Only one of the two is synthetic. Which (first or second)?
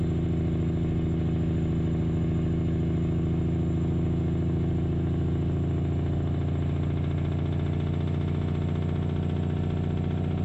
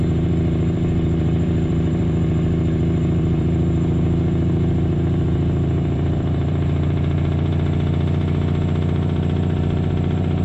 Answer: second